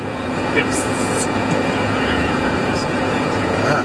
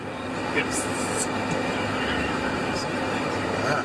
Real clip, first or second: second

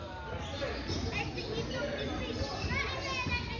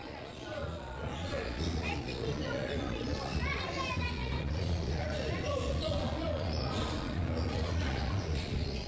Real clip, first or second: first